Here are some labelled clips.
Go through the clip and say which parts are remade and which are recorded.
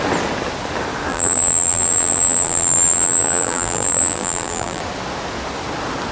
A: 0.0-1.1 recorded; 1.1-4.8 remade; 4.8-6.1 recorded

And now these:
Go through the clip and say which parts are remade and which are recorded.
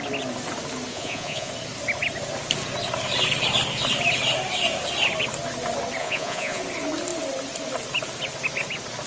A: 0.0-0.9 recorded; 0.9-1.5 remade; 1.5-6.0 recorded; 6.0-6.6 remade; 6.6-9.1 recorded